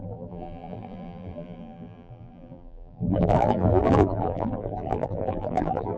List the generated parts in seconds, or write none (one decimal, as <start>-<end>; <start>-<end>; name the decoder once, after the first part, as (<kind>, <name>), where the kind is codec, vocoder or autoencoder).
0.0-6.0 (vocoder, BigVGAN v2)